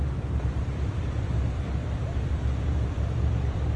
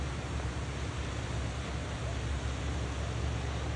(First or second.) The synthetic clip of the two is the first